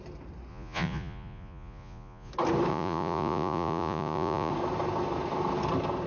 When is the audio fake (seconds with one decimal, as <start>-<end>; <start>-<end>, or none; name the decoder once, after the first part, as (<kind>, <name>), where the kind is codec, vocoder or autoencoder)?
0.5-2.3 (vocoder, Vocos); 2.7-4.5